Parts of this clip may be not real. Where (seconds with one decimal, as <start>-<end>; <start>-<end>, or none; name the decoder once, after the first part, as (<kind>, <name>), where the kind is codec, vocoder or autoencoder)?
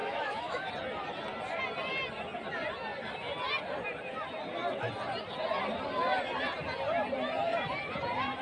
0.0-0.7 (autoencoder, DAC-VAE)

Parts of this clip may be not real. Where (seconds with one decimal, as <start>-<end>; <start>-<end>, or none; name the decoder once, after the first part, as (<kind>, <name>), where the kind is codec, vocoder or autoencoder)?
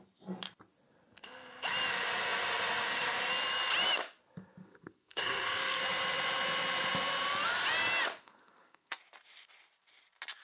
4.6-5.8 (codec, SNAC); 8.2-9.0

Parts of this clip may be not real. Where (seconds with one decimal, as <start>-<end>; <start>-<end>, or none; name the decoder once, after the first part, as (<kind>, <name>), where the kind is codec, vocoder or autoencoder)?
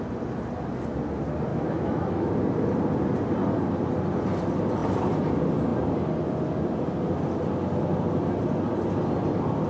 1.5-2.3 (autoencoder, DAC-VAE)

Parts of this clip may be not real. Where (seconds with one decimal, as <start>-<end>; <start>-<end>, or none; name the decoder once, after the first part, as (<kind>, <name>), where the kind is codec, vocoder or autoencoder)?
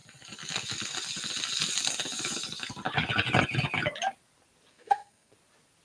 4.7-5.3 (codec, SNAC)